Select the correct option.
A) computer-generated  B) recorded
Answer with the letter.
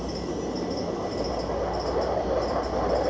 B